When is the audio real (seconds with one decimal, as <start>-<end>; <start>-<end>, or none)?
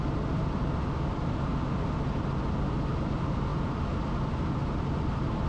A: 1.5-2.7; 3.5-4.9